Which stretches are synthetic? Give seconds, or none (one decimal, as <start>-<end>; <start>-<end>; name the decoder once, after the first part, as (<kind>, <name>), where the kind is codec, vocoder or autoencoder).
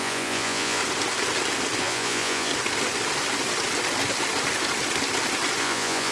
0.0-0.8 (vocoder, Vocos); 1.8-2.5; 5.6-6.1